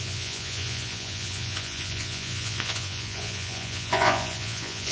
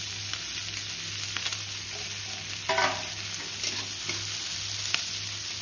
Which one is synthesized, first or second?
first